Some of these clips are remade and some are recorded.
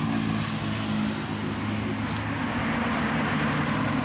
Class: recorded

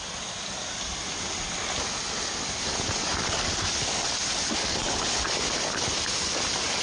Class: recorded